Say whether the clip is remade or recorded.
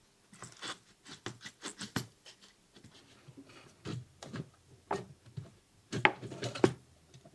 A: recorded